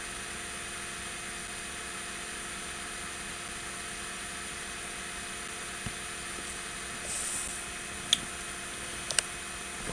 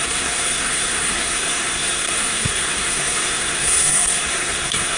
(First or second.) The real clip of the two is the first